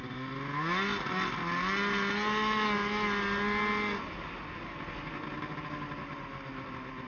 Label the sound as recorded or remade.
recorded